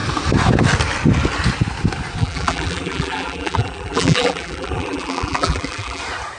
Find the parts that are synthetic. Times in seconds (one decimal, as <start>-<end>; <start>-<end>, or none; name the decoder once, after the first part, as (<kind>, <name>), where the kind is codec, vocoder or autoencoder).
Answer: 2.2-6.0 (vocoder, BigVGAN v2)